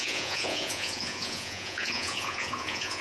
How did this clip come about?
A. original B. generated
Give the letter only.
B